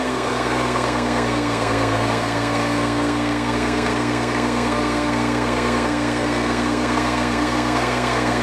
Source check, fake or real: fake